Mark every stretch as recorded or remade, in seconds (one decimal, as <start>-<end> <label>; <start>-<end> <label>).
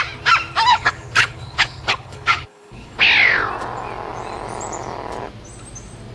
0.0-0.7 recorded; 0.7-3.0 remade; 3.0-6.1 recorded